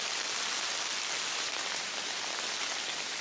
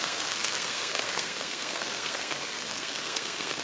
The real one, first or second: first